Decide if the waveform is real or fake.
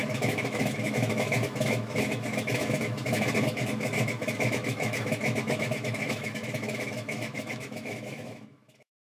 fake